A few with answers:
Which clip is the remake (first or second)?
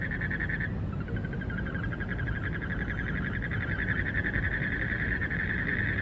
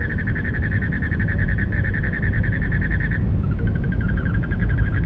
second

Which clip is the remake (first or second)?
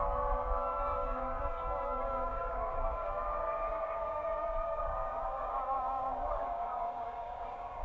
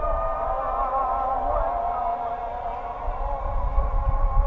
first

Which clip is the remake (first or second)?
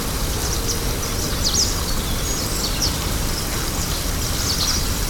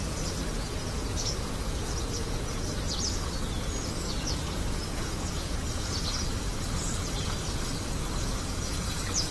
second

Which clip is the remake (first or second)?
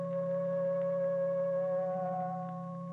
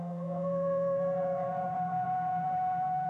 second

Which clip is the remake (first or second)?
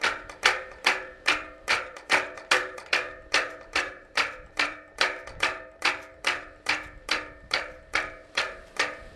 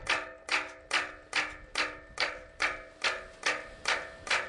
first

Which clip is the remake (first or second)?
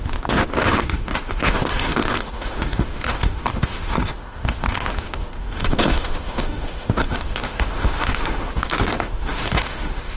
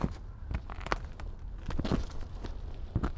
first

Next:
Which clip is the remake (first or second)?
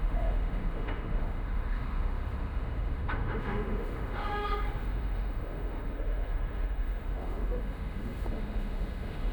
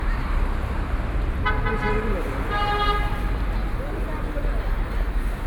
first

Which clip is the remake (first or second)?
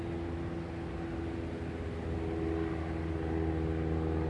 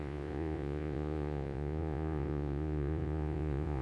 second